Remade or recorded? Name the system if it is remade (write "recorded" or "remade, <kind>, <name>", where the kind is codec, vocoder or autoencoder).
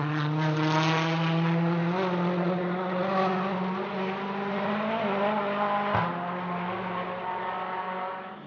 recorded